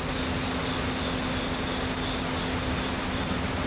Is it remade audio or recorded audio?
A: recorded